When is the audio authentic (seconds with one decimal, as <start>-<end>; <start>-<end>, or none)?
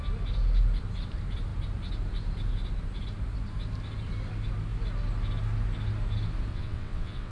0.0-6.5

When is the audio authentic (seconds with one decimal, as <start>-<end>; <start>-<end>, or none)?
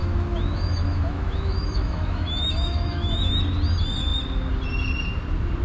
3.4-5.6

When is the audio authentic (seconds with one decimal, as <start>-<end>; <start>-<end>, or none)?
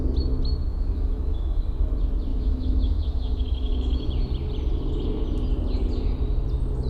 0.0-0.7; 1.6-2.3; 4.1-6.9